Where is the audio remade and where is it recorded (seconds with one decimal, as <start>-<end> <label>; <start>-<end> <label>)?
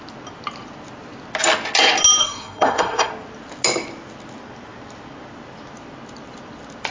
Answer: 0.0-2.2 recorded; 2.2-3.1 remade; 3.1-6.9 recorded